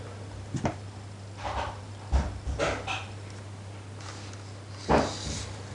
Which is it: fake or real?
real